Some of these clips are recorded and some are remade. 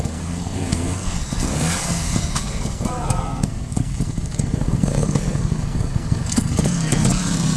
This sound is remade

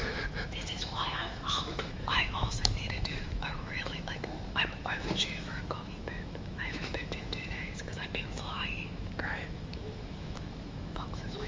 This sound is remade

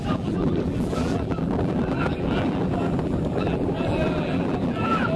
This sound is remade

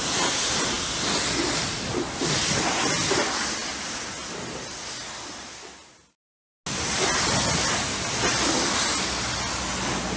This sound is recorded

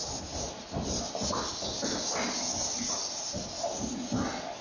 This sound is recorded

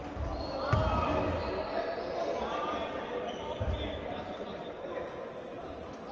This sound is recorded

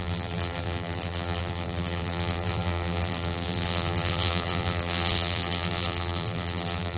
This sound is remade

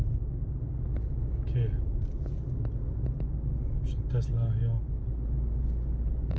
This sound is recorded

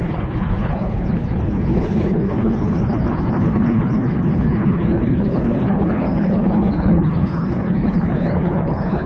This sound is remade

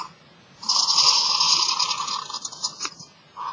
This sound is recorded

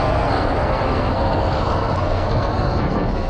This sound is remade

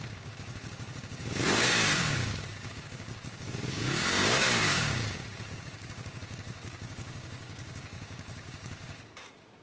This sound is remade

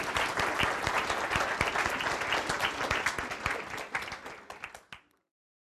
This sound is recorded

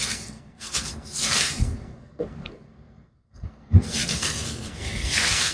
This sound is remade